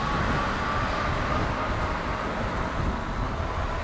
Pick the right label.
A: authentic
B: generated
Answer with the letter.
A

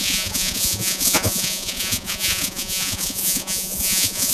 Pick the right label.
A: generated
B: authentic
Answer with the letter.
A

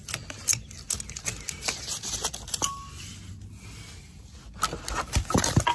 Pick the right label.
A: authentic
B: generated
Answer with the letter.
A